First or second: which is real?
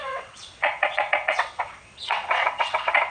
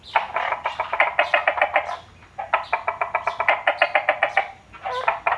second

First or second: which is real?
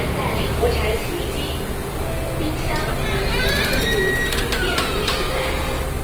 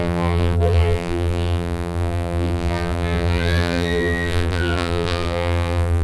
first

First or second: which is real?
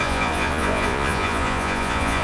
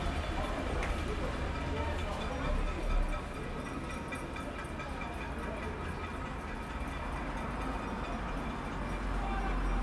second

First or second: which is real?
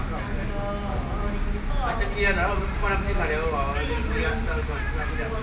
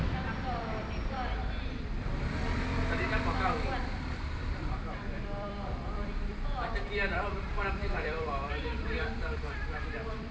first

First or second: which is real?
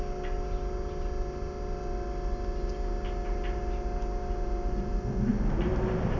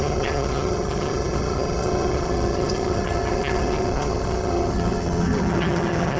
first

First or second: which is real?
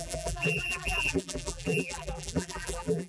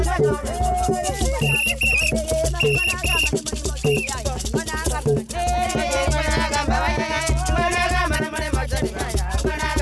second